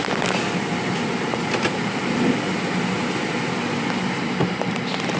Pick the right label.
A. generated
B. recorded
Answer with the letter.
B